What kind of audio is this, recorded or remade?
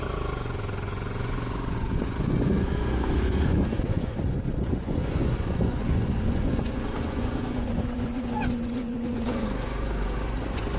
remade